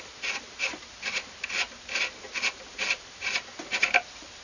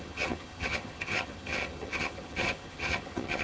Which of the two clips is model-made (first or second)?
second